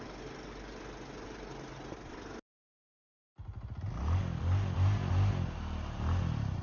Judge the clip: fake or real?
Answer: real